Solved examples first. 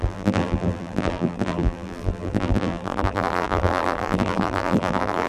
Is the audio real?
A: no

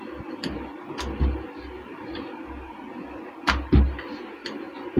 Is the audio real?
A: no